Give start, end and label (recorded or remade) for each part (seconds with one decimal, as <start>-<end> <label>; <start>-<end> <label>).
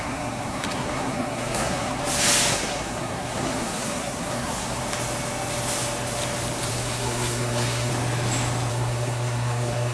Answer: 0.0-2.0 remade; 2.0-2.5 recorded; 2.5-4.8 remade; 4.8-6.7 recorded; 6.7-7.9 remade; 7.9-8.7 recorded; 8.7-9.9 remade